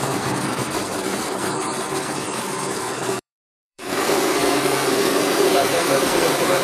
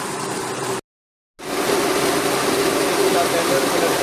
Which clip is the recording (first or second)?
second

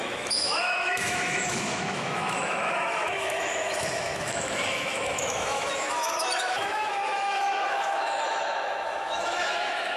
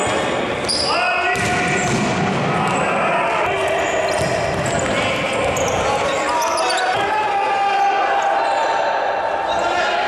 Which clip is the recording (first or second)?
second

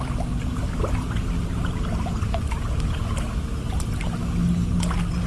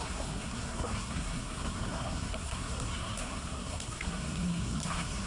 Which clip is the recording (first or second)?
first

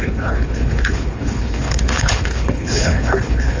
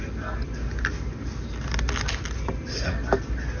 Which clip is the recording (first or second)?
second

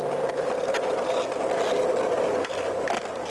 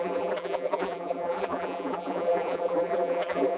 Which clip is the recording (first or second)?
first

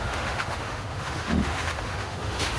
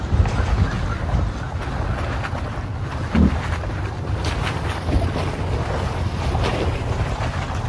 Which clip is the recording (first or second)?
second